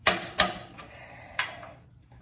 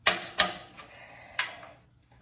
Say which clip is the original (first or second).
second